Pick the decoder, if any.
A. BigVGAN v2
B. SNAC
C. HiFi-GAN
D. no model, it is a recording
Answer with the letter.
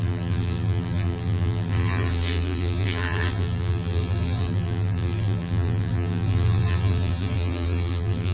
A